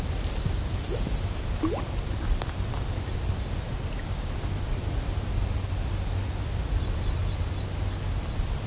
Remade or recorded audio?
recorded